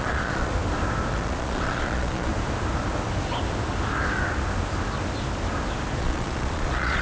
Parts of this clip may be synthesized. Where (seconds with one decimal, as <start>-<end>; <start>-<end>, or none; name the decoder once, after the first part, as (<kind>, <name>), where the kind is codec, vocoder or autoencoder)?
0.0-0.5 (vocoder, Vocos); 1.1-2.3; 6.0-7.0